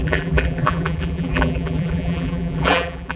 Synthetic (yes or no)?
yes